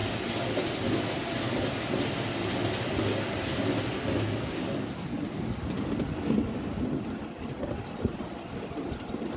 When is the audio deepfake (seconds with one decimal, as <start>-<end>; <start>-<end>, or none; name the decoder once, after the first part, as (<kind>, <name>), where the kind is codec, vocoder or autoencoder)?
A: none